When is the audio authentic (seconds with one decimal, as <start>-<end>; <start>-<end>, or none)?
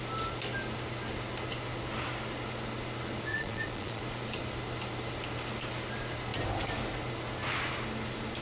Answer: 0.0-3.3; 4.0-8.4